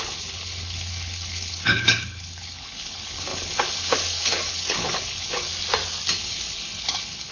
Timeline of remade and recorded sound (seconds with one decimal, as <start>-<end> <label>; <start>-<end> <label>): 0.0-5.5 remade; 5.5-6.1 recorded; 6.1-7.3 remade

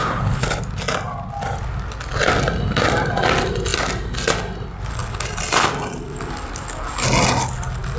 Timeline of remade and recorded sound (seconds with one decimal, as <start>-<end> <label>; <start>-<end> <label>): 0.0-0.6 remade; 0.6-8.0 recorded